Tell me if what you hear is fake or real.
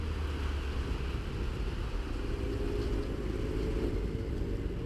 real